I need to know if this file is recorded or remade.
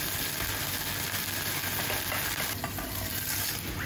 recorded